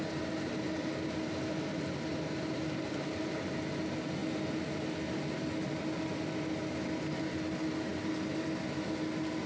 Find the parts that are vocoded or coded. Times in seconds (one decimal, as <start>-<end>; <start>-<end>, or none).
none